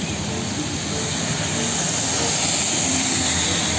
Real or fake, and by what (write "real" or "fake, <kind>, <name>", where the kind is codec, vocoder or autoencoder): real